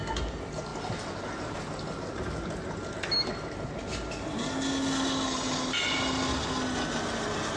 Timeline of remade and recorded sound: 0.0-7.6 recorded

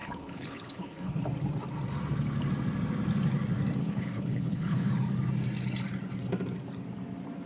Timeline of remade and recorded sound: 0.0-1.2 remade; 1.2-3.8 recorded; 3.8-4.9 remade; 4.9-7.5 recorded

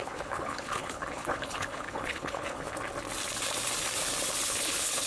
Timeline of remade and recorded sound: 0.0-2.7 remade; 2.7-4.5 recorded; 4.5-5.1 remade

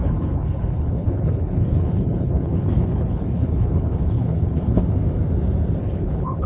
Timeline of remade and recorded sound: 0.0-4.8 remade; 4.8-5.8 recorded; 5.8-6.5 remade

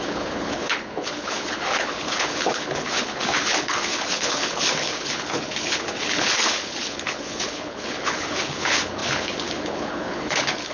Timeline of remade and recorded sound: 0.0-10.7 remade

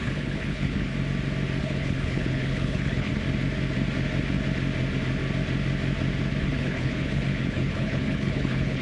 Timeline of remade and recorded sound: 0.0-0.9 remade; 0.9-1.6 recorded; 1.6-3.1 remade; 3.1-6.4 recorded; 6.4-8.8 remade